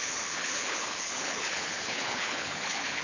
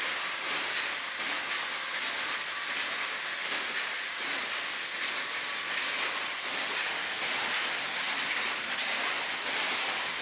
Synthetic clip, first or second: first